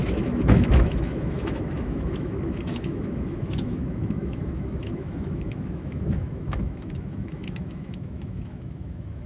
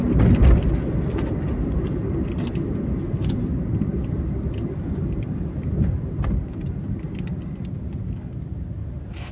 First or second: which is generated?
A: first